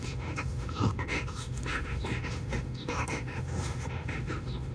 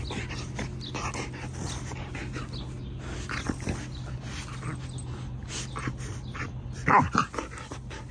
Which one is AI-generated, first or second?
first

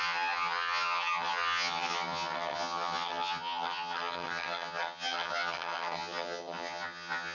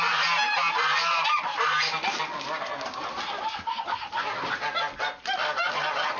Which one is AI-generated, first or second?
first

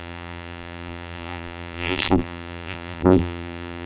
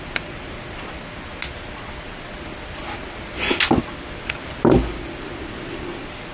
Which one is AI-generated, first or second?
first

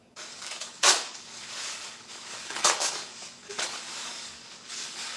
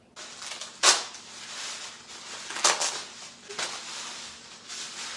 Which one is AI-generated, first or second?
first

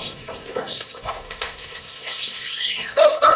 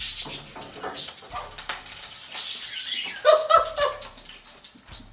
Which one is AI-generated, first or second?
first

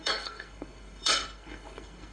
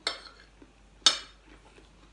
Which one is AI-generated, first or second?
first